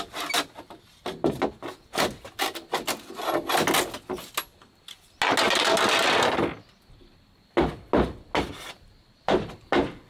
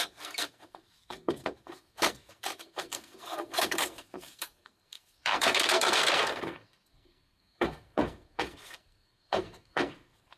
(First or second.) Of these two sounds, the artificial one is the second